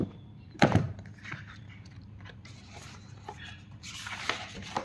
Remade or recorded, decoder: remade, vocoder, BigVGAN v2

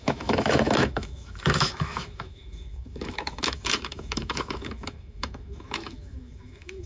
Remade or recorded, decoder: remade, autoencoder, DAC-VAE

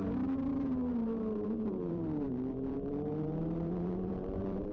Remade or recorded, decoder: remade, vocoder, BigVGAN v2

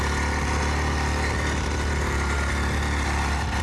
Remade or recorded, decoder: recorded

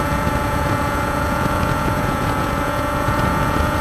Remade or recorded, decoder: remade, vocoder, Vocos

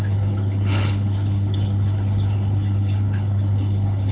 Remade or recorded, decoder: remade, codec, HILCodec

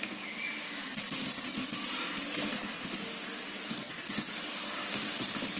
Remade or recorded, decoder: recorded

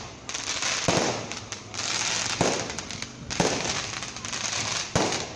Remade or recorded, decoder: recorded